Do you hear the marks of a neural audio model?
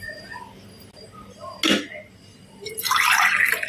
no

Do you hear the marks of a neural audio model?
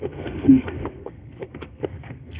yes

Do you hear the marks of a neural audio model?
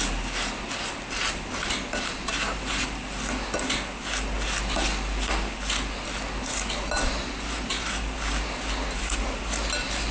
no